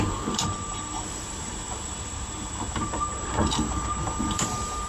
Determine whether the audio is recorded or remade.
remade